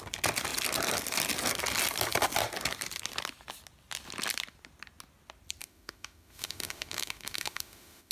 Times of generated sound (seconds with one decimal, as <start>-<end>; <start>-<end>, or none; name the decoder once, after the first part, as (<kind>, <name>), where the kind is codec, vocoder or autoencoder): 5.6-8.1 (autoencoder, DAC-VAE)